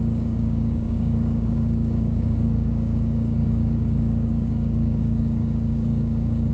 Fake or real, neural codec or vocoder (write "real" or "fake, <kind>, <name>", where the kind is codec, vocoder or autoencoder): fake, codec, DAC